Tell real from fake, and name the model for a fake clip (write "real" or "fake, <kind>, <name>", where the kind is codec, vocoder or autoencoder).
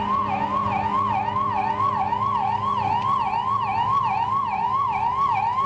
real